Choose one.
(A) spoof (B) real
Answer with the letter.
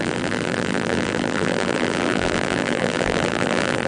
A